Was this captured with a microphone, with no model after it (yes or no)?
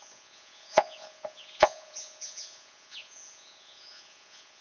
no